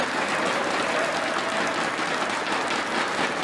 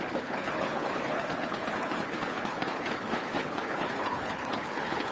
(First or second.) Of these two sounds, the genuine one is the first